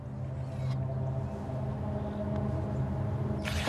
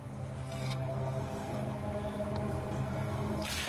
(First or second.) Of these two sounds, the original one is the first